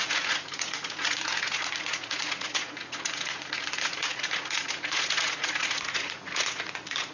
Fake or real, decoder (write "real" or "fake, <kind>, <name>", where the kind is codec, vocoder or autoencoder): fake, vocoder, Vocos